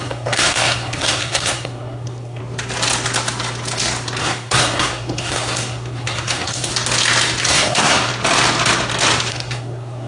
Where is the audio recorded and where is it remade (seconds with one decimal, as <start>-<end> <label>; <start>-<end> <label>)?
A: 0.0-2.4 remade; 2.4-4.2 recorded; 4.2-6.7 remade; 6.7-7.4 recorded; 7.4-8.1 remade; 8.1-9.3 recorded; 9.3-10.1 remade